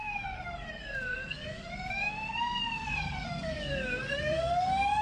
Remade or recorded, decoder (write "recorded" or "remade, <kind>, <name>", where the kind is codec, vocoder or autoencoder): remade, codec, SNAC